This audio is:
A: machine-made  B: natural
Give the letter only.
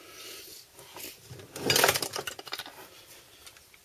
B